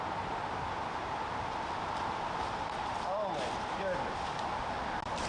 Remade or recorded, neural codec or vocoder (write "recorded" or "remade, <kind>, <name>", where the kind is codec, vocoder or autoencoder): recorded